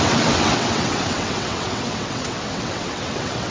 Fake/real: fake